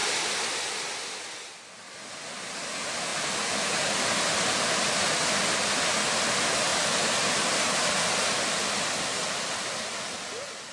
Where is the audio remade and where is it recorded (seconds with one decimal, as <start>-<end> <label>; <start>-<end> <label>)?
0.0-10.7 recorded